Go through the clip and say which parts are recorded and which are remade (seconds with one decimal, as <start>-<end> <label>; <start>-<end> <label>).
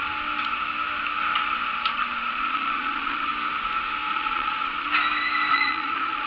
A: 0.0-1.9 recorded; 1.9-3.3 remade; 3.3-4.1 recorded; 4.1-4.9 remade; 4.9-5.5 recorded; 5.5-6.3 remade